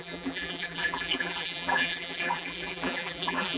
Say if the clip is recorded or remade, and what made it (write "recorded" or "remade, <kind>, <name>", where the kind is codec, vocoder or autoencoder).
remade, vocoder, BigVGAN v2